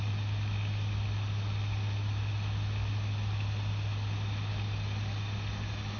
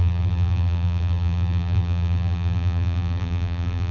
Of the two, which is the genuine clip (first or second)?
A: first